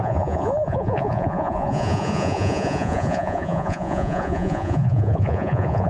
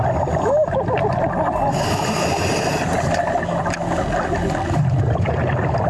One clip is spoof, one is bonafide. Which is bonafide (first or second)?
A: second